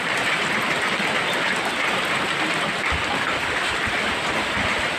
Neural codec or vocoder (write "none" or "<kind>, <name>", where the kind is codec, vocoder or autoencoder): none